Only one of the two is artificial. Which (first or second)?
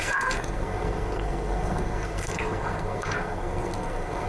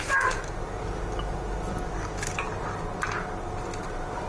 first